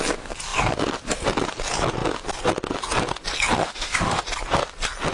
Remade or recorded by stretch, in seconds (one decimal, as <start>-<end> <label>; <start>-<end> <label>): 0.0-3.6 recorded; 3.6-4.2 remade; 4.2-5.1 recorded